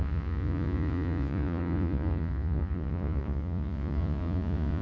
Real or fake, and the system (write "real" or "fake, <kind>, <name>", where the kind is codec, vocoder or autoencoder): fake, vocoder, Vocos